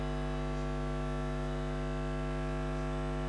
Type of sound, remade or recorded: remade